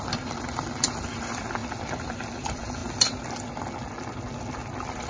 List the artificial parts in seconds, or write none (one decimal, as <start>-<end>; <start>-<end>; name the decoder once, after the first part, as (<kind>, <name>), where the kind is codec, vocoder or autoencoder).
none